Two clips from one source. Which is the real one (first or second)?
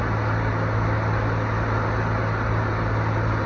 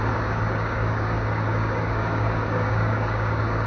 first